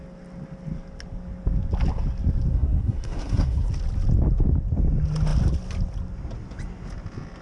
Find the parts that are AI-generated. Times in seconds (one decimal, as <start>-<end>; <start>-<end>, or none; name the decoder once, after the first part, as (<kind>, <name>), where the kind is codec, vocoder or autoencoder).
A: 2.5-3.7 (codec, SNAC)